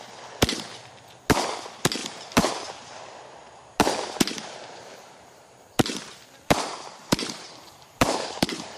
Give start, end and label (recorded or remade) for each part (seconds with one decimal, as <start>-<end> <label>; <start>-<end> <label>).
0.0-2.0 recorded; 2.0-2.5 remade; 2.5-3.4 recorded; 3.4-8.8 remade